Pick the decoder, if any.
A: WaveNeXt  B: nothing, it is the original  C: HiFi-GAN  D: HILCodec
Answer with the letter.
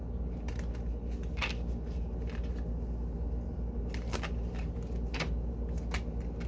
B